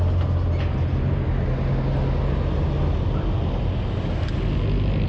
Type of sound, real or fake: real